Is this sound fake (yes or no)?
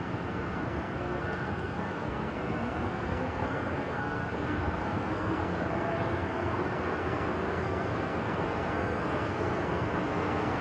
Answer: yes